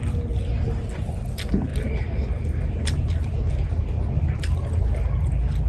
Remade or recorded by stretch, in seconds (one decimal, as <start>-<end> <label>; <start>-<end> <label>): 0.0-5.7 recorded